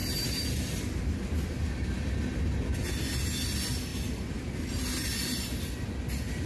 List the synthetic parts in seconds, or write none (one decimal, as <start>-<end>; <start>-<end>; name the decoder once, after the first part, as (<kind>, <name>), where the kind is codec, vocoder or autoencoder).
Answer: 0.0-0.8 (vocoder, BigVGAN v2); 3.9-4.5